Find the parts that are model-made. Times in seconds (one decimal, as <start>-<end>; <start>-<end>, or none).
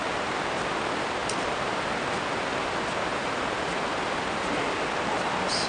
none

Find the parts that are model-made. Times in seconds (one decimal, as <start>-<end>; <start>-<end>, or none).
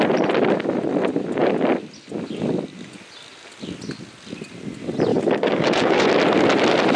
5.1-6.1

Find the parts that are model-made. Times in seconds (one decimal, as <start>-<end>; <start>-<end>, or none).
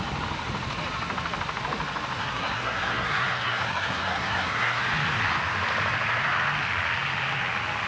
2.2-4.8